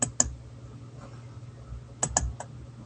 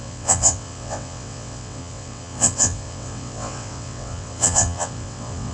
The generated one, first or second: second